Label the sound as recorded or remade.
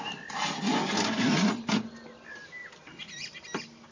recorded